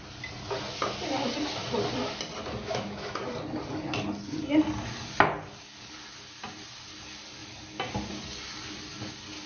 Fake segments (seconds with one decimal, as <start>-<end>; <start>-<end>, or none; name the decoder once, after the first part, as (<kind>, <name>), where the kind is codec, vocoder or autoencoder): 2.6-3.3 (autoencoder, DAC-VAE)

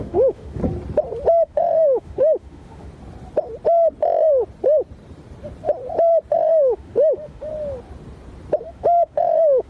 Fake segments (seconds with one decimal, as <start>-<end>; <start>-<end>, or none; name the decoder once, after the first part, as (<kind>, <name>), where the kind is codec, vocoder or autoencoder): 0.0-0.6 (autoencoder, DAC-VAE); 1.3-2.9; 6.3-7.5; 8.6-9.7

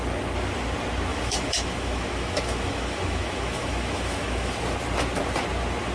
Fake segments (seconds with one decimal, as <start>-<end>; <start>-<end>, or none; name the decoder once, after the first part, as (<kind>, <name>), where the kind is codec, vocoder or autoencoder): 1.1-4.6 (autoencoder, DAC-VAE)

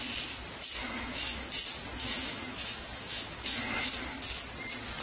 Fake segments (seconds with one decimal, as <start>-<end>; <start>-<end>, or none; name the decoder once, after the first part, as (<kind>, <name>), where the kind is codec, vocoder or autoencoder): 0.8-1.5 (autoencoder, DAC-VAE); 2.0-3.9

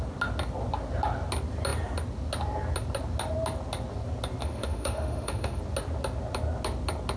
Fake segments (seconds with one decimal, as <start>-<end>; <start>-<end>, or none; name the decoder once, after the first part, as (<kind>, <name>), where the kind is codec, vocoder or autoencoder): 4.4-5.6 (autoencoder, DAC-VAE)